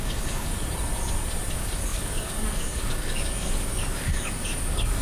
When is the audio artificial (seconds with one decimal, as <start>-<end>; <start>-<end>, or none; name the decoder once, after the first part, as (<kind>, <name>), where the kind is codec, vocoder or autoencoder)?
0.0-0.5 (codec, DAC); 1.5-5.0